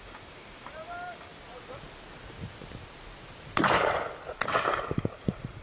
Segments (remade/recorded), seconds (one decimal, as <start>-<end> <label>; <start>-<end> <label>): 0.0-1.3 remade; 1.3-4.7 recorded; 4.7-5.6 remade